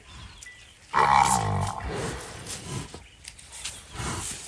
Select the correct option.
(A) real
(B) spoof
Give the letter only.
A